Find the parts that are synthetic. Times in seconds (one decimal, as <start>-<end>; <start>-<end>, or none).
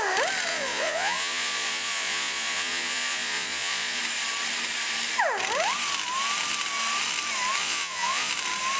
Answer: 0.5-4.0; 7.6-8.3